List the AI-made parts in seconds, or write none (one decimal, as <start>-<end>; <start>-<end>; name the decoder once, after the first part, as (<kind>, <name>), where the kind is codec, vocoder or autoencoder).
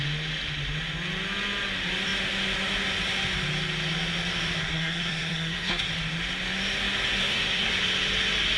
4.6-5.9 (codec, SNAC); 7.2-7.7